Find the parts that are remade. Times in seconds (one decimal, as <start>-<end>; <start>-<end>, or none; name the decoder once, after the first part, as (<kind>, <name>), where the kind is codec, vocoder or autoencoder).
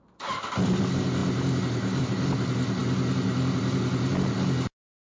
none